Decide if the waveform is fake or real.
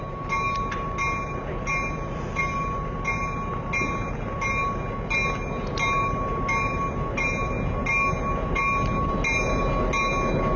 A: real